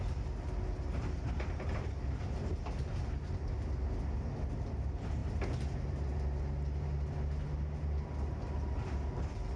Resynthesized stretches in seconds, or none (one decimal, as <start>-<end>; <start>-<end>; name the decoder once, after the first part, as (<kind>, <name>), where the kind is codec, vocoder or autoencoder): none

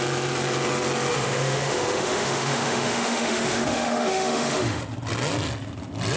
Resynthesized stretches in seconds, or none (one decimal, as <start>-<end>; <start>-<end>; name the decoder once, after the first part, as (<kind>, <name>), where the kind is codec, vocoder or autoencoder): 1.1-4.8 (autoencoder, DAC-VAE)

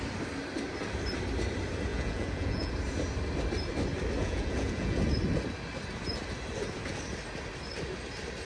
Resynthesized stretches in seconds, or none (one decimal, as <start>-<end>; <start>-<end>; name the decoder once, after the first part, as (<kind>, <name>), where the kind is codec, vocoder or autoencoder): 1.9-2.7 (vocoder, Vocos); 4.2-5.0

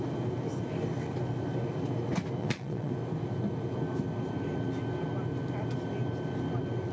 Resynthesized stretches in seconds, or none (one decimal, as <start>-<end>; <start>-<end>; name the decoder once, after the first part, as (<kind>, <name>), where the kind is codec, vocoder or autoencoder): 2.4-2.9 (vocoder, Vocos)

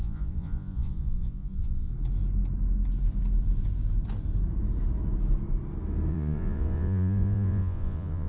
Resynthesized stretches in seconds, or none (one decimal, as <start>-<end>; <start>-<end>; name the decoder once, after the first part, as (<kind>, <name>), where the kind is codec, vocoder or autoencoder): 0.0-1.9 (vocoder, Vocos); 6.1-8.3

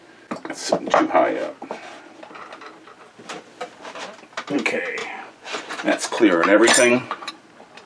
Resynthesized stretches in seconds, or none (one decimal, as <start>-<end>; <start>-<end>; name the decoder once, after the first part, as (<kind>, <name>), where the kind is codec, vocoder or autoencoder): 5.0-7.3 (vocoder, Vocos)

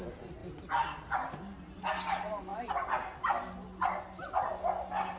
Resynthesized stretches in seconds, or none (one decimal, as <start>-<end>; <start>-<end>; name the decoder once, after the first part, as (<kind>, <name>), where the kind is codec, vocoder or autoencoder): none